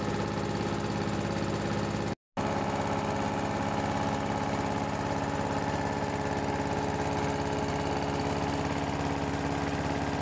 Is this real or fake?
real